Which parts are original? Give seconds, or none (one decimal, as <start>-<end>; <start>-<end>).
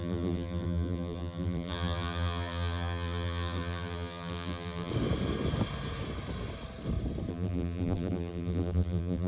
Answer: 4.9-7.3